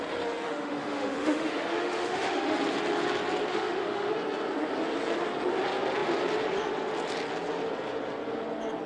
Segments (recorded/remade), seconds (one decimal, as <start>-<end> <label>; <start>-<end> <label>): 0.0-0.4 recorded; 0.4-2.6 remade; 2.6-3.5 recorded; 3.5-4.1 remade; 4.1-8.9 recorded